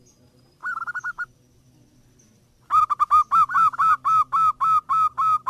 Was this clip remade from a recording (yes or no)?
no